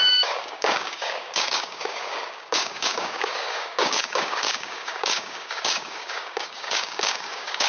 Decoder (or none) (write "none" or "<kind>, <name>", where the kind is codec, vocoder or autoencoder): codec, DAC